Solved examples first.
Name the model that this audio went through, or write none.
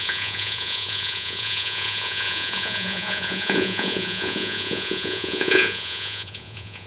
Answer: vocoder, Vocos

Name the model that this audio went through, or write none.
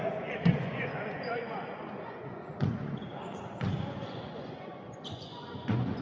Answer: vocoder, Vocos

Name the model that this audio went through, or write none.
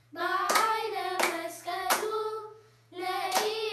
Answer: vocoder, Vocos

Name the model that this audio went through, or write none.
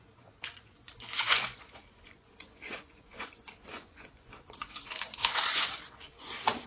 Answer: vocoder, Vocos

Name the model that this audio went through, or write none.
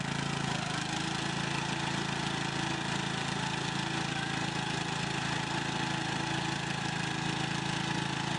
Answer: none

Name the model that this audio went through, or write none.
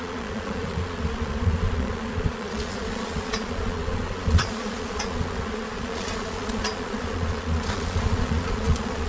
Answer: vocoder, Vocos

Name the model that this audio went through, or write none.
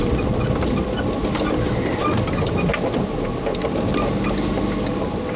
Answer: none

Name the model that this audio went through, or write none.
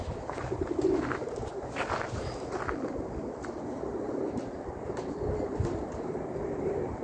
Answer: none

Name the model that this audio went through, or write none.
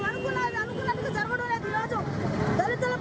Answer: none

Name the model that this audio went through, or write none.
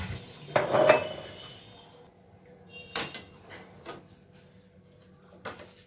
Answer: none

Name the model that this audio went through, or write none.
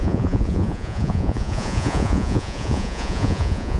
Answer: vocoder, Vocos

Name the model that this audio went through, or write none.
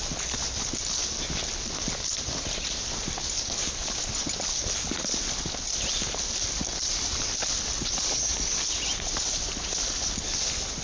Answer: none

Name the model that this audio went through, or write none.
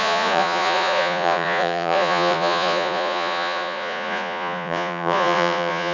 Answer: vocoder, Vocos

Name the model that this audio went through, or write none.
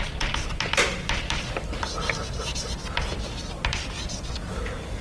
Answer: none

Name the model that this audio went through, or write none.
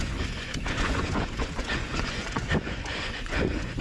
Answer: vocoder, Vocos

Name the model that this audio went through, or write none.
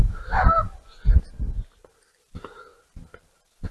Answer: none